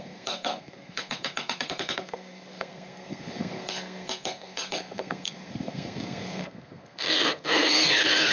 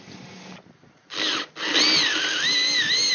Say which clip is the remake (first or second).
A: first